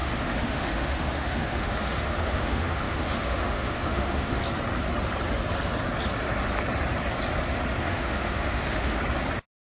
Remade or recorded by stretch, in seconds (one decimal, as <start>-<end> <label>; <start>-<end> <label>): 0.0-4.4 remade; 4.4-7.8 recorded; 7.8-9.0 remade; 9.0-9.7 recorded